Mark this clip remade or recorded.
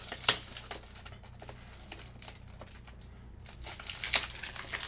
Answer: recorded